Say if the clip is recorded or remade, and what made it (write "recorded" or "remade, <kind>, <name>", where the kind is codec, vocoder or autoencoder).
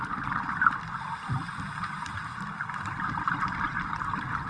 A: remade, vocoder, BigVGAN v2